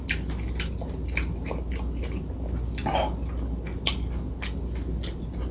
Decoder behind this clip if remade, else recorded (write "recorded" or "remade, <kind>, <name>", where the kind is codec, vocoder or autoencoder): recorded